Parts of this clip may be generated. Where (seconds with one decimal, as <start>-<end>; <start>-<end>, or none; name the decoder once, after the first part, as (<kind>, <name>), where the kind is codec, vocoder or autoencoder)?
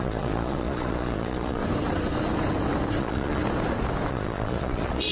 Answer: 0.0-1.6 (vocoder, Vocos); 3.0-3.4; 4.1-5.1